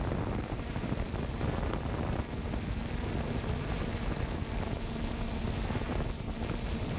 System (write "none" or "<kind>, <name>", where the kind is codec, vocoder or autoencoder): none